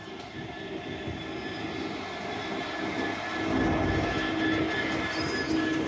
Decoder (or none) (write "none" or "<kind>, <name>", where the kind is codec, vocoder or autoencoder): none